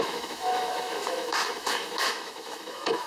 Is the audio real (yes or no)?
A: no